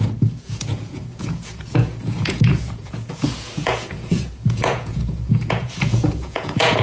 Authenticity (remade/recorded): remade